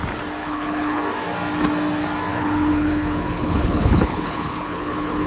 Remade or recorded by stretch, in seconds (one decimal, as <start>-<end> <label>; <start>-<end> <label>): 0.0-0.4 recorded; 0.4-1.0 remade; 1.0-2.3 recorded; 2.3-5.3 remade